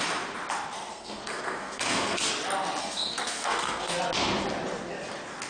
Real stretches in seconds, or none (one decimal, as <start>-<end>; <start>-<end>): 0.0-0.9; 2.3-2.8; 4.0-5.5